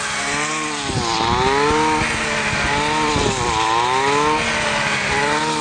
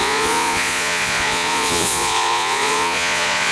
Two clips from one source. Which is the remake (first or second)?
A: second